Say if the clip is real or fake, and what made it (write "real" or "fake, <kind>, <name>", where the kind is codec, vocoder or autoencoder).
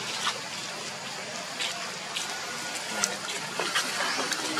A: real